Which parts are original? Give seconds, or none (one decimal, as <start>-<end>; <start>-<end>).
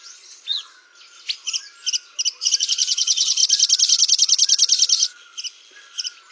0.8-2.6; 3.4-6.3